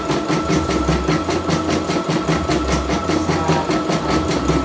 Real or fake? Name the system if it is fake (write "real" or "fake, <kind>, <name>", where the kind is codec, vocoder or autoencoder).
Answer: real